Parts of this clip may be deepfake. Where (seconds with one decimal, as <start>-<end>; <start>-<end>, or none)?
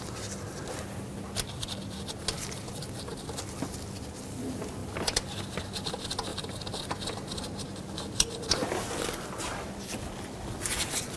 8.6-10.0